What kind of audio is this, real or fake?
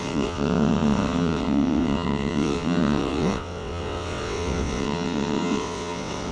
fake